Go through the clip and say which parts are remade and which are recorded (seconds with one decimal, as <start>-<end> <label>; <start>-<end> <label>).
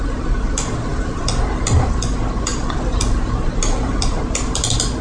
0.0-5.0 recorded